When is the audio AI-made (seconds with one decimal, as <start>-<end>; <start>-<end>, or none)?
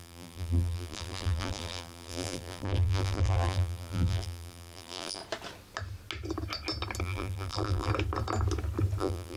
0.0-5.2; 7.0-7.9; 9.0-9.4